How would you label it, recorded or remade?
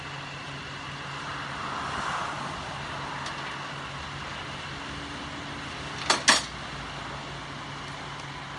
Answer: recorded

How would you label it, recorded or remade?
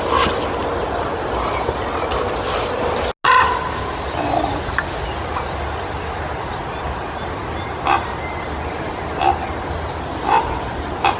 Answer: recorded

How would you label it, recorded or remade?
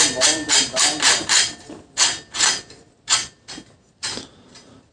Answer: recorded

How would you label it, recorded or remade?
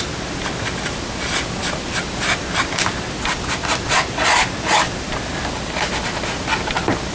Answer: recorded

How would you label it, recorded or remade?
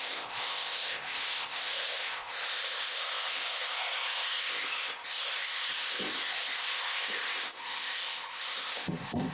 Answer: remade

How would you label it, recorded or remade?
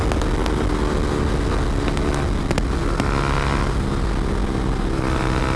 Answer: recorded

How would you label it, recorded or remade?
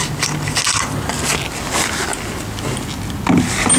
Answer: recorded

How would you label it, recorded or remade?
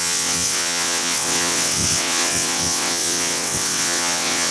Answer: remade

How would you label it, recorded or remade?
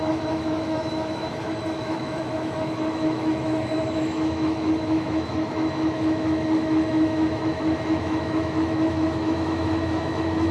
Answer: remade